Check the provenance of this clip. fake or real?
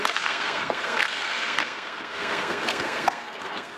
fake